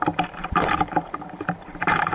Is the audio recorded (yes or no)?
no